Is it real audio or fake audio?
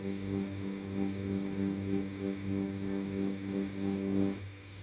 fake